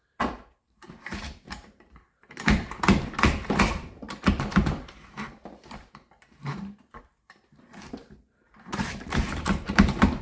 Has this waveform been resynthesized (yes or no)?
yes